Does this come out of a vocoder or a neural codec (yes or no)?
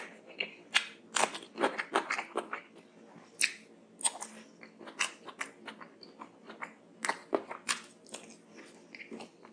no